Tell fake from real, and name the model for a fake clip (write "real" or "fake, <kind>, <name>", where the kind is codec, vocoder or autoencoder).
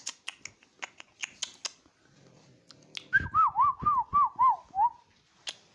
real